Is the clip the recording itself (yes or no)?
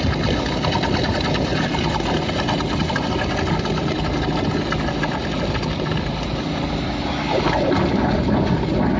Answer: yes